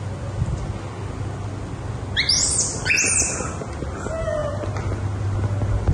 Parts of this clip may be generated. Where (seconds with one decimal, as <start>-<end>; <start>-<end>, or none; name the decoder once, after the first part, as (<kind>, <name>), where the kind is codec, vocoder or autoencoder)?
none